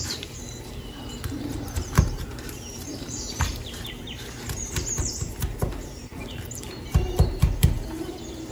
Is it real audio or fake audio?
fake